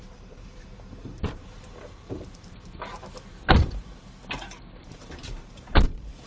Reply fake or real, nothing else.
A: fake